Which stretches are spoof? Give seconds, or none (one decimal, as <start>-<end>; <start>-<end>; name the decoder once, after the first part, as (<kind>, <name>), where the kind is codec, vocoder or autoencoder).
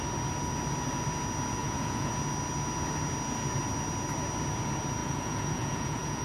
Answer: 1.6-2.1 (vocoder, Vocos); 5.0-6.2